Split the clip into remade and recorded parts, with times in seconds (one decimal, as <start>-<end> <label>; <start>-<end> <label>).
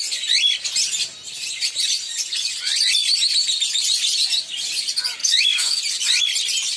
0.0-5.2 recorded; 5.2-5.8 remade; 5.8-6.8 recorded